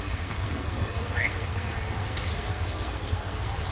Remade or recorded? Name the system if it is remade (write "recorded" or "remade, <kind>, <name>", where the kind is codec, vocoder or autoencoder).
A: remade, codec, SNAC